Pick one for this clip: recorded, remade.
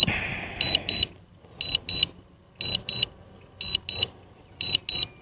recorded